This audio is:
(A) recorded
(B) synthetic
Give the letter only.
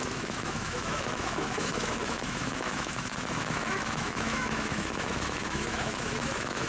B